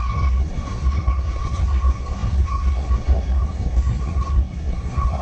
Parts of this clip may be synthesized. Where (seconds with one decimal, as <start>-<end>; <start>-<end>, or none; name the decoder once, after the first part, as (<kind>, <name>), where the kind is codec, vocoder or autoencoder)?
0.0-5.2 (codec, SNAC)